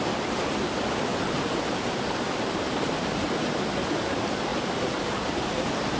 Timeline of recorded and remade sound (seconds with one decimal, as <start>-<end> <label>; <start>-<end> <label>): 0.0-1.1 recorded; 1.1-2.9 remade; 2.9-4.5 recorded; 4.5-5.1 remade; 5.1-6.0 recorded